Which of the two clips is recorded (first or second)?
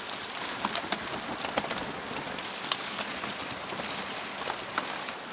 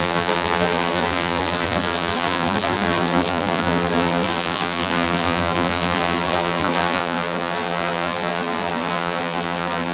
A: first